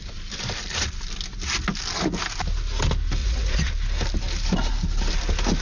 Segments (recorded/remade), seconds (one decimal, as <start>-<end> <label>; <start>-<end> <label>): 0.0-3.2 recorded; 3.2-3.7 remade; 3.7-5.6 recorded